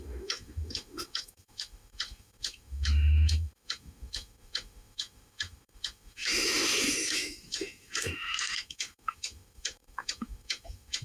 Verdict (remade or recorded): remade